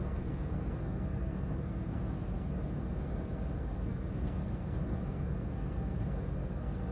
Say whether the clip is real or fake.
fake